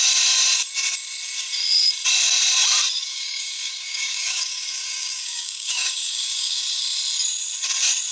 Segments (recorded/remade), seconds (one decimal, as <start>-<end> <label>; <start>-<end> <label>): 0.0-3.1 recorded; 3.1-6.8 remade; 6.8-8.1 recorded